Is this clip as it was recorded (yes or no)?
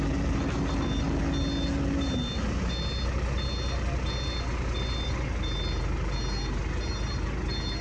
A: yes